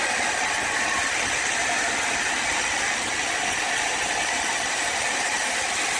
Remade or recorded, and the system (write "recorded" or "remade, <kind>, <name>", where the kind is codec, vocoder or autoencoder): recorded